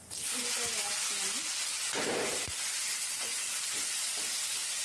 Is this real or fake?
real